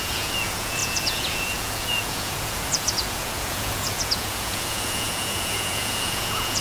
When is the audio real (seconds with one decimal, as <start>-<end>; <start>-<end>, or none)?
none